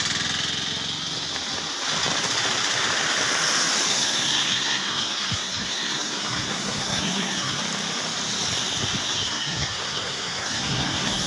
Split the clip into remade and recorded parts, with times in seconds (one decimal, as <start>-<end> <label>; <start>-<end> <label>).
0.0-3.9 recorded; 3.9-7.6 remade; 7.6-9.0 recorded; 9.0-11.3 remade